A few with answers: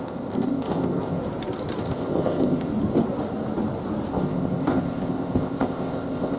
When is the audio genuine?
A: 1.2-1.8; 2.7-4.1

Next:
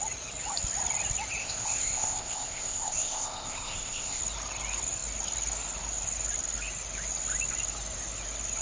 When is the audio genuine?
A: 0.0-1.4; 4.2-8.6

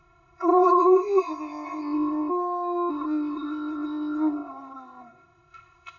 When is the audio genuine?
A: 2.3-2.9

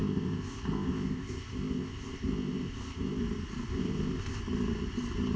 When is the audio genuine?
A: 3.2-3.7; 4.4-5.4

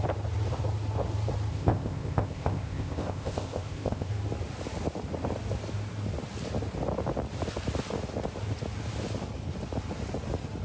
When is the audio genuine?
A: 0.0-1.5; 4.1-10.6

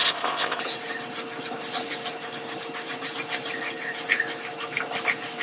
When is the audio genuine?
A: 0.6-5.4

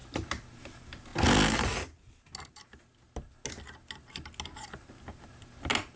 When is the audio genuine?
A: 0.0-6.0